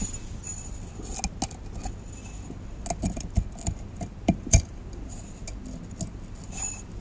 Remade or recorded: recorded